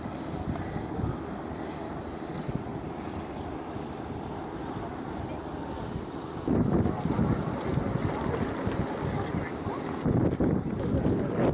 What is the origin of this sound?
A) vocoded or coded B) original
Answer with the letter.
B